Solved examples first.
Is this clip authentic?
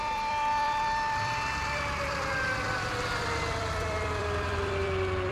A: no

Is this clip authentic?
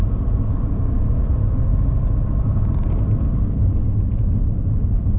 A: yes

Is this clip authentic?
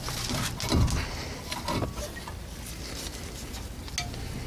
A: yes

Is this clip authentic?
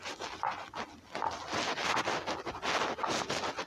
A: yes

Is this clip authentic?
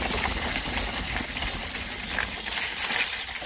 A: yes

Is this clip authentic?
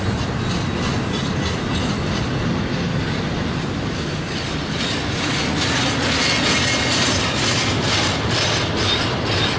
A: yes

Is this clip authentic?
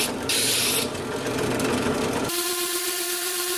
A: no